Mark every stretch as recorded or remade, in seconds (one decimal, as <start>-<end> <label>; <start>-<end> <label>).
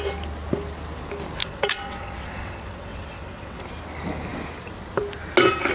0.0-1.4 recorded; 1.4-3.6 remade; 3.6-5.7 recorded